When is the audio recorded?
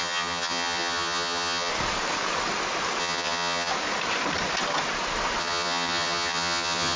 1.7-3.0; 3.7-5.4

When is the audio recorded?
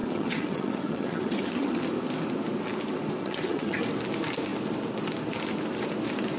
1.8-3.2; 3.8-6.4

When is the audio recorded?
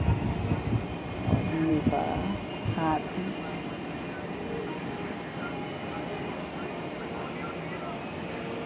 0.0-8.7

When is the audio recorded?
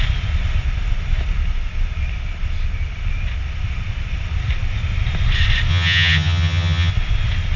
0.0-5.7; 6.9-7.6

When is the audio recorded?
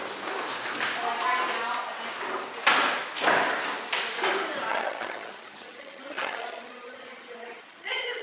0.0-4.7